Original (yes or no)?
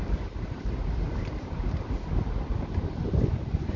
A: yes